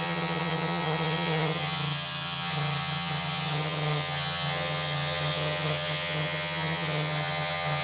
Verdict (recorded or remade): remade